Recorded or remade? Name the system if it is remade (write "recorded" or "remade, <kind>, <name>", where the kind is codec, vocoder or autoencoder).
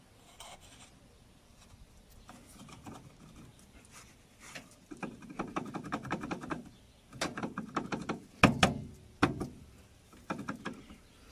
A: recorded